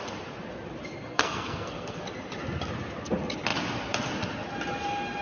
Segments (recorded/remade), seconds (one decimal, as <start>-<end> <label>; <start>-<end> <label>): 0.0-1.1 recorded; 1.1-2.0 remade; 2.0-5.2 recorded